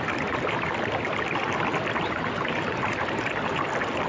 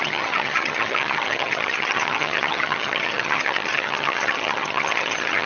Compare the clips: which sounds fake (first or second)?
second